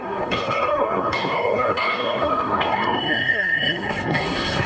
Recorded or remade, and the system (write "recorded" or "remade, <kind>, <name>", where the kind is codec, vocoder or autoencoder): remade, codec, SNAC